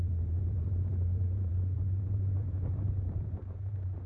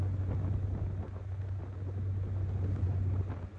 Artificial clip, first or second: first